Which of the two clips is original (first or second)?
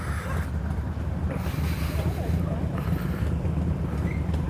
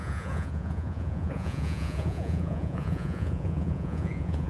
first